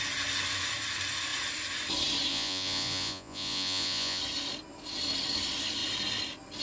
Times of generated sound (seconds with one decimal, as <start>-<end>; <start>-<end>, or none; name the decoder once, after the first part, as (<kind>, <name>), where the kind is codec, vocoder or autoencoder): 2.3-4.2 (vocoder, Vocos)